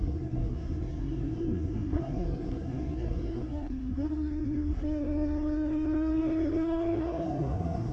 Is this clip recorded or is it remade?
remade